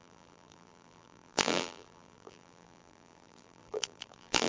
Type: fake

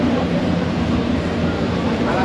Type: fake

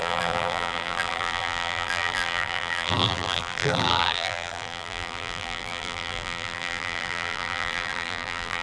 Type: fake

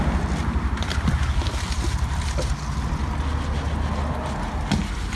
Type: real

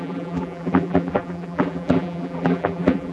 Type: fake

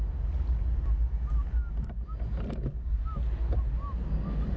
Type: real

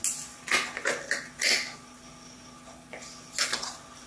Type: real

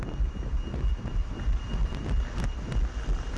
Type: real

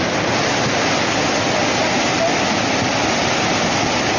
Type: real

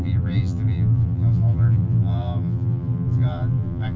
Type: fake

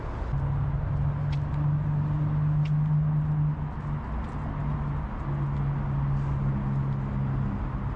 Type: real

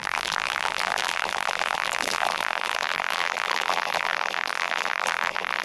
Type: fake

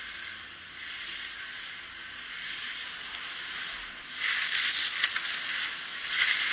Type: real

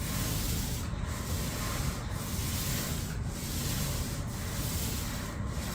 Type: real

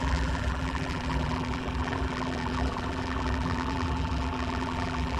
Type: fake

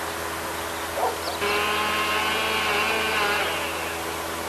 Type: real